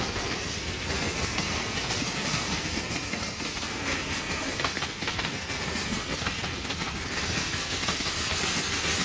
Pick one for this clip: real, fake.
fake